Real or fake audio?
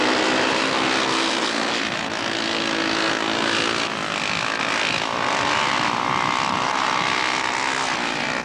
real